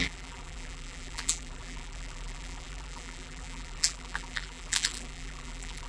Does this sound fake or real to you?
fake